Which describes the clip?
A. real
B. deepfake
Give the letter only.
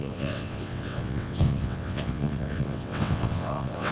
B